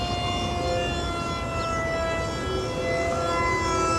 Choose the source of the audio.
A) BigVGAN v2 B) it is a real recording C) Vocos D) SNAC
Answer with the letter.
B